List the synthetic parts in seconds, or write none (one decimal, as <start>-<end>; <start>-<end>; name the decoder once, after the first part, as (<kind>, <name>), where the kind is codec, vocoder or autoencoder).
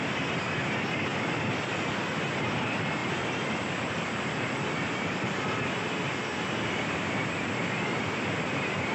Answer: 1.1-2.1 (vocoder, BigVGAN v2); 3.0-6.5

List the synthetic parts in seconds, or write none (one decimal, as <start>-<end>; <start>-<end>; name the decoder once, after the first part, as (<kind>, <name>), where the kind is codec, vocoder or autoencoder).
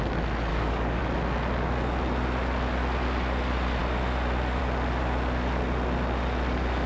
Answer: 0.5-1.0 (codec, DAC)